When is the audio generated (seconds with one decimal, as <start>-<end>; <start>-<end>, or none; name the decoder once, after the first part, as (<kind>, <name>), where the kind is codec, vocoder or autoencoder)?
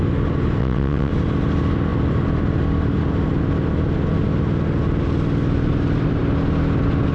0.6-1.1 (vocoder, WaveNeXt)